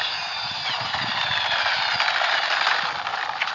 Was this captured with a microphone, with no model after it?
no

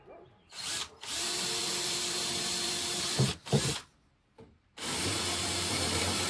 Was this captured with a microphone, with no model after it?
no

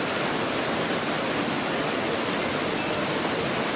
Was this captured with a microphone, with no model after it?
yes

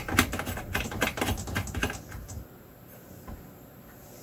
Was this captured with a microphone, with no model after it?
yes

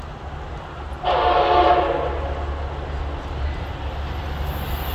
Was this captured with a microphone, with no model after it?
yes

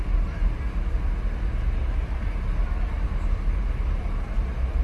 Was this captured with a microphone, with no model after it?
yes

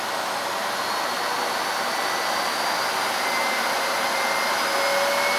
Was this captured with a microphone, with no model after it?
yes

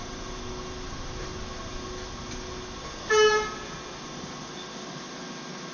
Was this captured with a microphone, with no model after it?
yes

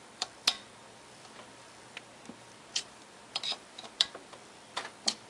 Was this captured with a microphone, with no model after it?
no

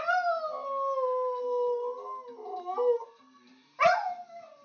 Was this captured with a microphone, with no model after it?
yes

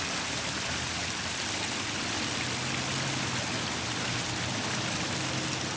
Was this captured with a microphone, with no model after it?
yes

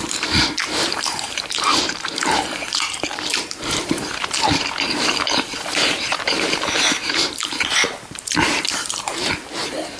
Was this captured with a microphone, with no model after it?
no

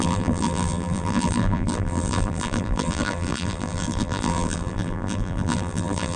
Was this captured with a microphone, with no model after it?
no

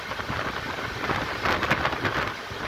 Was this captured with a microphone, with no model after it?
yes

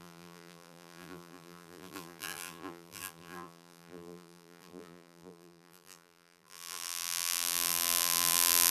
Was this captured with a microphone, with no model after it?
no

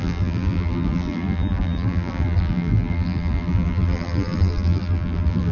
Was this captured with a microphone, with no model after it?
no